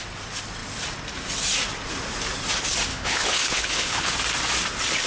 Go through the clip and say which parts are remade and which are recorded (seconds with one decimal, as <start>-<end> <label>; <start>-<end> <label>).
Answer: 0.0-2.9 recorded; 2.9-4.1 remade; 4.1-5.1 recorded